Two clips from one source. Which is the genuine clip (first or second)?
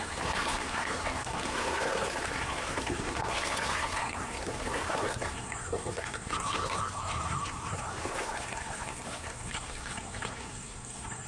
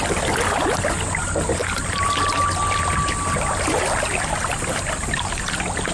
second